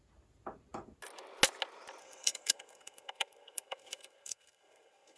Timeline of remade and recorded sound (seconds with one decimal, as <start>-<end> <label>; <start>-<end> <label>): 0.0-2.0 recorded; 2.0-5.2 remade